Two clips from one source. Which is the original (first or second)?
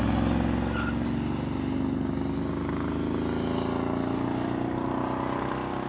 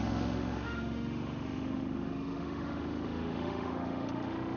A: first